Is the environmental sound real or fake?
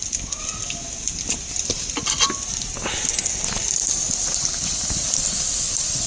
real